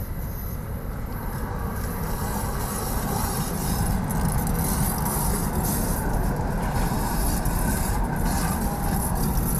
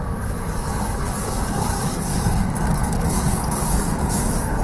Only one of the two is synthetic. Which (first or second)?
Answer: second